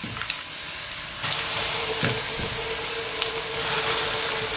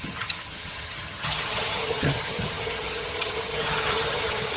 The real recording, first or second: first